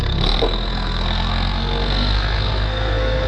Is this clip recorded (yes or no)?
no